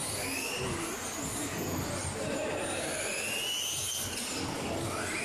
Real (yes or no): yes